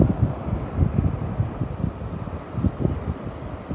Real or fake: real